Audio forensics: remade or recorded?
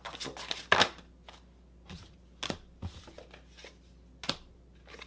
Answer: recorded